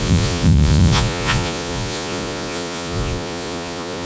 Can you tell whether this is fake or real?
fake